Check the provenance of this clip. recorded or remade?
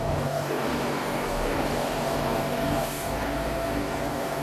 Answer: remade